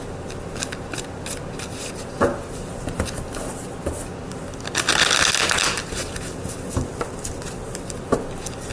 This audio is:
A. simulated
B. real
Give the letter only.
B